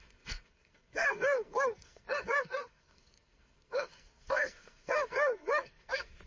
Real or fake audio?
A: fake